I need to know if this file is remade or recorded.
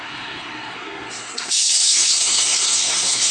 remade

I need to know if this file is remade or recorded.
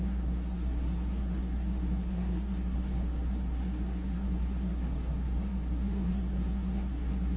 remade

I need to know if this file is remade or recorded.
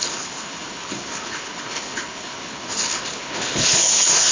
remade